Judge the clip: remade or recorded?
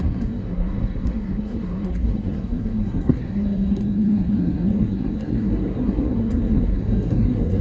remade